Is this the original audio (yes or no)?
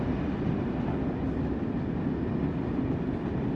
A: yes